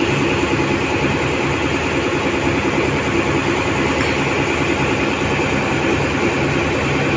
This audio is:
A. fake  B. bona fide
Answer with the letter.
B